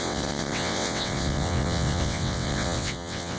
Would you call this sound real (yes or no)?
no